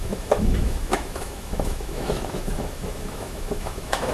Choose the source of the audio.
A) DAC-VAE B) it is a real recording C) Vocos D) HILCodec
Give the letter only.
A